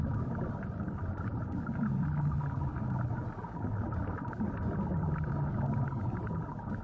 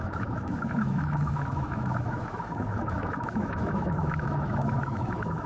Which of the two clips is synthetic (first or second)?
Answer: second